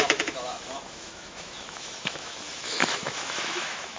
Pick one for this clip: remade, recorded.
remade